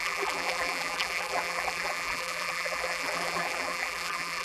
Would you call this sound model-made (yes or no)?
yes